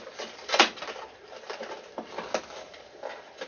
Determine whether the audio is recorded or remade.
recorded